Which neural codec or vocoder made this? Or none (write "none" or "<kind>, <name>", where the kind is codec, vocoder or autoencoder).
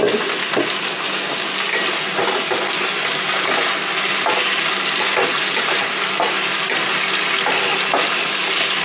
none